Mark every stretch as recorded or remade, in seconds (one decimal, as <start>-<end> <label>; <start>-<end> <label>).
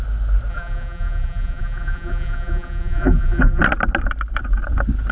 0.0-0.5 recorded; 0.5-3.6 remade; 3.6-5.1 recorded